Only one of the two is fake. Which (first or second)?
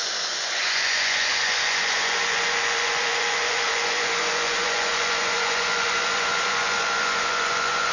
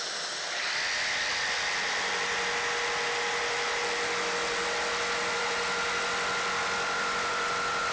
first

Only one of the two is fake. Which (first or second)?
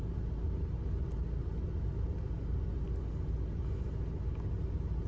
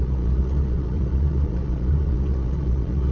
second